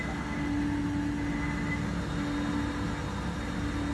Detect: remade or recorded recorded